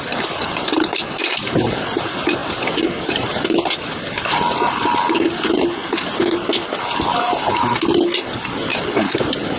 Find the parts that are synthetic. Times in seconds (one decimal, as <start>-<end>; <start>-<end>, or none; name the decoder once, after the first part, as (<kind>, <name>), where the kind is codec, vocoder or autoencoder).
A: 0.0-2.4 (vocoder, BigVGAN v2); 3.1-5.8